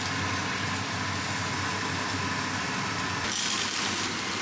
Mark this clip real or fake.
real